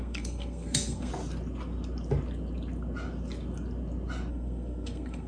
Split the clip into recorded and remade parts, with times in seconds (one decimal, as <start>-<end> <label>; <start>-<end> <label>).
0.0-1.1 remade; 1.1-4.3 recorded; 4.3-5.3 remade